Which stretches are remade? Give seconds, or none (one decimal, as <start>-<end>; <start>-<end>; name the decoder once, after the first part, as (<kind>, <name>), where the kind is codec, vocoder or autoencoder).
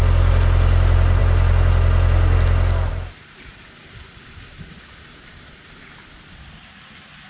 none